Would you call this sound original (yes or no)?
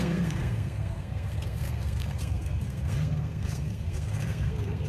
no